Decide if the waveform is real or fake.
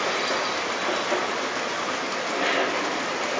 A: real